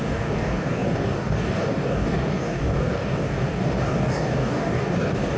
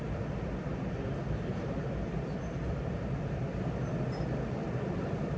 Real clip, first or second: second